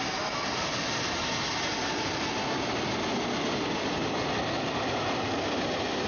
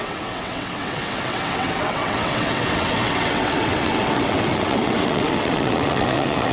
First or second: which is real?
first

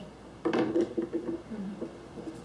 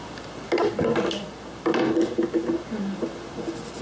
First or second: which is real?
second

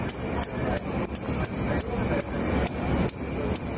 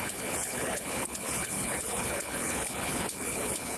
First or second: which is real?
first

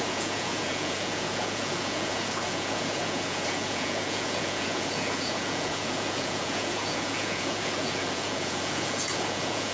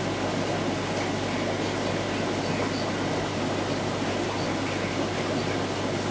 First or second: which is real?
second